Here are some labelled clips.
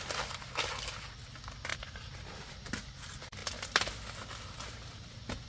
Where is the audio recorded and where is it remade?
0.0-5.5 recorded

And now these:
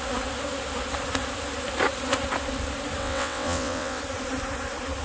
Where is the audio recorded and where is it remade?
0.0-3.0 recorded; 3.0-4.0 remade; 4.0-5.0 recorded

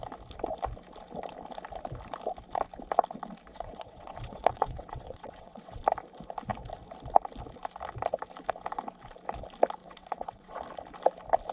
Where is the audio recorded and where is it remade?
0.0-3.5 recorded; 3.5-5.8 remade; 5.8-9.8 recorded; 9.8-10.6 remade; 10.6-11.5 recorded

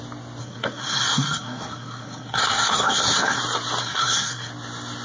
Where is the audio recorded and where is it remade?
0.0-0.4 recorded; 0.4-3.4 remade; 3.4-3.8 recorded; 3.8-4.5 remade; 4.5-5.0 recorded

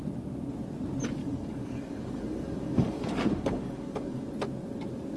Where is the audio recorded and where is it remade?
0.0-1.2 recorded; 1.2-4.3 remade; 4.3-5.2 recorded

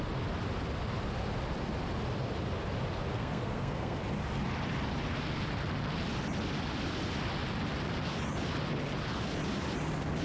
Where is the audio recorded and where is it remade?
0.0-3.1 recorded; 3.1-4.0 remade; 4.0-10.2 recorded